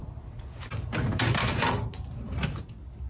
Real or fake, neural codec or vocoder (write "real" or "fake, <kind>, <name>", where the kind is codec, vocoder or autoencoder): real